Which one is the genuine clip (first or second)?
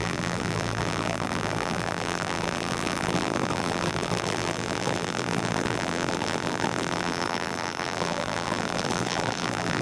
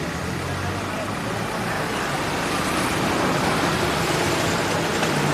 second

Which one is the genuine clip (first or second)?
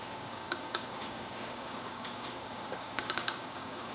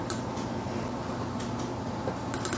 second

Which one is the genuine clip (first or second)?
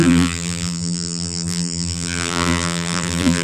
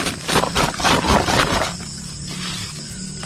second